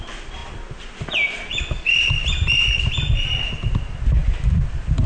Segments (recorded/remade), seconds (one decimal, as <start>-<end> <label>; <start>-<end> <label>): 0.0-5.1 recorded